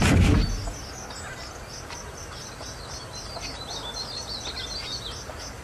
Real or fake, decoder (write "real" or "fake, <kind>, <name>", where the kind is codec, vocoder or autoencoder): real